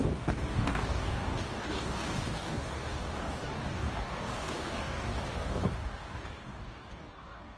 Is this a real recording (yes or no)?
no